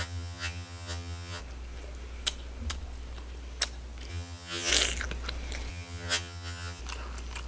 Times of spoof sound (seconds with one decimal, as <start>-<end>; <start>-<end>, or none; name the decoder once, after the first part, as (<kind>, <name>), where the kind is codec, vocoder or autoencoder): 0.0-1.4 (vocoder, HiFi-GAN); 4.1-4.7; 5.7-6.8